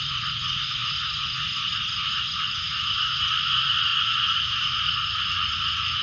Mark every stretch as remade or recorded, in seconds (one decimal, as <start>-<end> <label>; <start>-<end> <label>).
0.0-6.0 remade